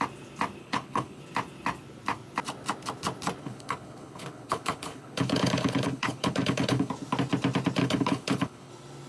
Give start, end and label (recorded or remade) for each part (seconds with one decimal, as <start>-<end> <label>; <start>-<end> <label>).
0.0-0.6 recorded; 0.6-1.2 remade; 1.2-3.4 recorded; 3.4-6.9 remade; 6.9-7.8 recorded; 7.8-8.7 remade; 8.7-9.1 recorded